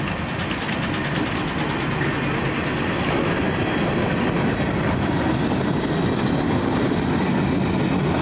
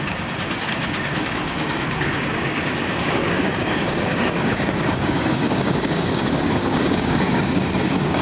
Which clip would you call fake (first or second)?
second